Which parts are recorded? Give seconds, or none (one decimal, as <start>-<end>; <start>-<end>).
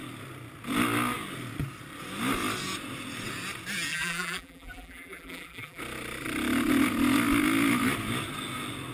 0.0-3.9; 5.8-8.9